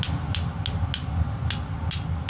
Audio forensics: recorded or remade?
recorded